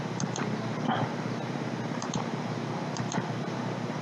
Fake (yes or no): yes